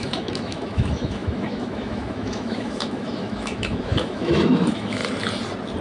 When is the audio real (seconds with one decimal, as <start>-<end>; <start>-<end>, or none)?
5.0-5.8